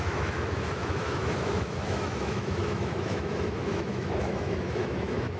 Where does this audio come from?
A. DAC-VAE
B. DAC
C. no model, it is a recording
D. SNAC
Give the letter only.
A